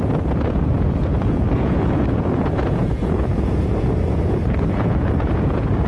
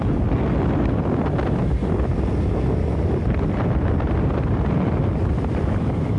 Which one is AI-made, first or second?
first